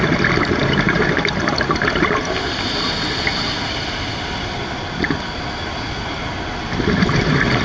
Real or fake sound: real